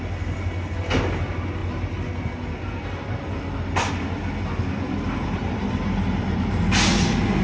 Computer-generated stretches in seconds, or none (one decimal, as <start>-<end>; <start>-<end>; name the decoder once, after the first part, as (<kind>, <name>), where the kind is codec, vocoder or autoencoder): none